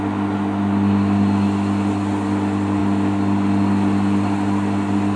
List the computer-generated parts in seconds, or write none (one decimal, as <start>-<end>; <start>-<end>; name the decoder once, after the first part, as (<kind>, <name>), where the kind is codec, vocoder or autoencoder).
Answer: none